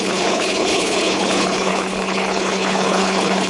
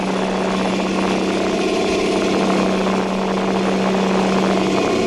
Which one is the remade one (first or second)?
first